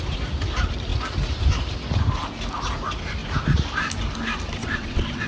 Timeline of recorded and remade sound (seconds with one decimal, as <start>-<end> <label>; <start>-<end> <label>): 0.0-4.6 recorded; 4.6-5.3 remade